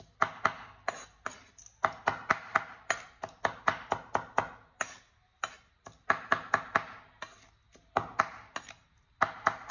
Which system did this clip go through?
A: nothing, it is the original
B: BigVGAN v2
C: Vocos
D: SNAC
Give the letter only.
A